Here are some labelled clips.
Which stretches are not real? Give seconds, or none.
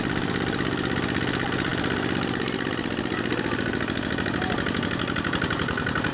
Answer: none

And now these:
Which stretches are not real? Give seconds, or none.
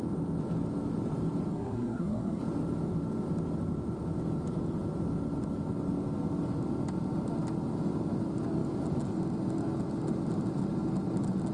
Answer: 1.5-2.4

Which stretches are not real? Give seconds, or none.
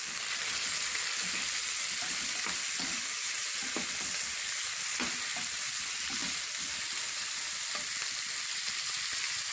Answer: none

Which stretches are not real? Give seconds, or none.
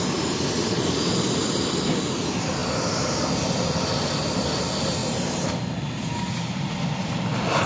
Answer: none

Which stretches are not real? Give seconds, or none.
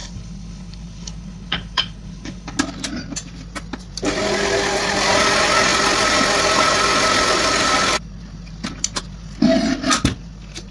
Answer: 0.0-2.6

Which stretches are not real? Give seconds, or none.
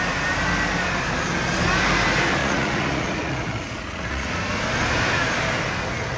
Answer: 2.4-4.3